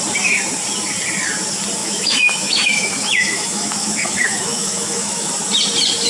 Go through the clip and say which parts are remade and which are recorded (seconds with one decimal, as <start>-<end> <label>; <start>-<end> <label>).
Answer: 0.0-1.8 recorded; 1.8-5.3 remade; 5.3-6.1 recorded

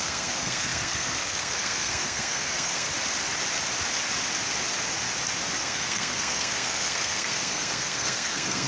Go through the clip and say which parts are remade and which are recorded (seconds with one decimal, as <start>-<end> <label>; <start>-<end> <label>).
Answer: 0.0-2.9 remade; 2.9-5.6 recorded; 5.6-8.7 remade

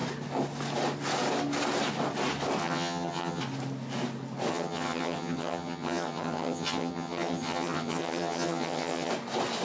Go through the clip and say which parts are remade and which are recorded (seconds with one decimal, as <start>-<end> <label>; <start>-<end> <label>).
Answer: 0.0-2.6 recorded; 2.6-3.4 remade; 3.4-4.5 recorded; 4.5-9.1 remade; 9.1-9.6 recorded

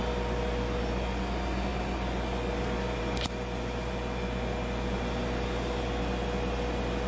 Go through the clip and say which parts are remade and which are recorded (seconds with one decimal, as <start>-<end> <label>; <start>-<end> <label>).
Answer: 0.0-7.1 recorded